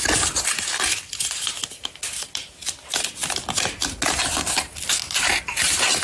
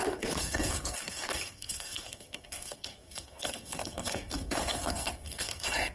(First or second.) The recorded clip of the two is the first